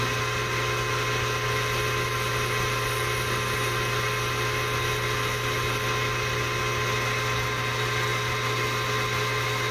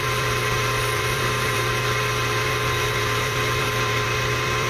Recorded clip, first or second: first